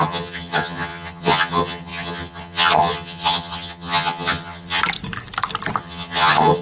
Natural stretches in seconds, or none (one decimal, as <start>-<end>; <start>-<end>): 4.8-5.8

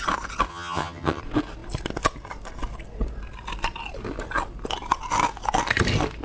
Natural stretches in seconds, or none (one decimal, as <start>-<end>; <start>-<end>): 0.0-0.5; 1.2-6.2

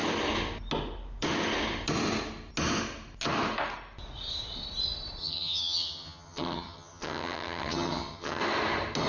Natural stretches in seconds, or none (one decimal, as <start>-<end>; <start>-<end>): 0.0-5.2; 8.4-9.1

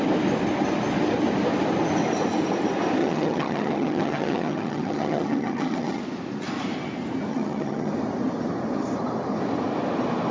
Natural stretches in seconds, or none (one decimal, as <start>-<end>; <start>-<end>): 0.0-3.0; 6.0-7.3; 7.9-10.3

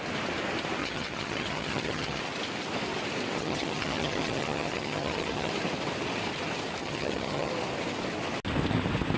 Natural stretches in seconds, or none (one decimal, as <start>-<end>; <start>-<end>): 0.0-0.8; 2.2-3.4; 5.5-6.8; 7.5-9.2

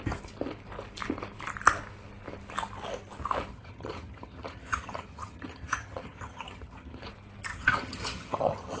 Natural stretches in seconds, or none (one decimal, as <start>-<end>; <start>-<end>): 0.0-3.5; 7.1-7.5

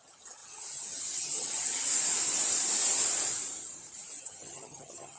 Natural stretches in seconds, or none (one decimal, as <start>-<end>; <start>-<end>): 1.9-4.2

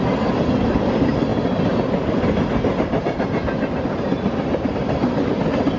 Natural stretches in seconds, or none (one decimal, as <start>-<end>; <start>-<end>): 0.0-5.8